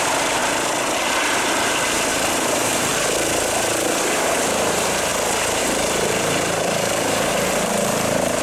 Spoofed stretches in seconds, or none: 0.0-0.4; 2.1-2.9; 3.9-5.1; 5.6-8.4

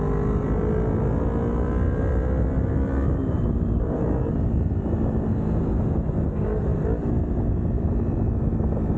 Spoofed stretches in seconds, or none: none

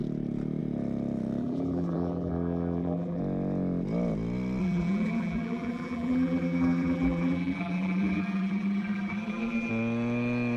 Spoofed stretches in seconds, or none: 1.4-3.2; 4.6-9.7

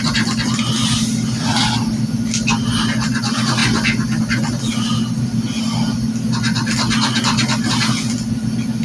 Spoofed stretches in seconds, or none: none

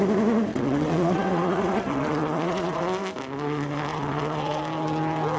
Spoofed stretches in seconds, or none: 0.5-2.8; 3.9-4.6

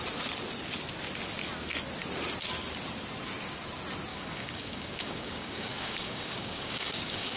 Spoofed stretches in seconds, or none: 4.1-7.4

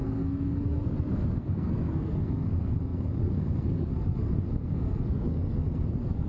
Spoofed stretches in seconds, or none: 0.0-6.3

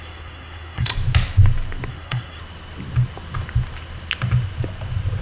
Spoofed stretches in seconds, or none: 0.0-0.9; 1.9-2.4